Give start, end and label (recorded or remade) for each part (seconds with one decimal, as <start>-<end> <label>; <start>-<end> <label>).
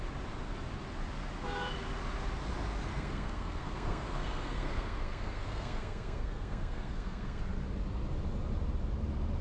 0.0-2.9 recorded; 2.9-7.4 remade; 7.4-9.4 recorded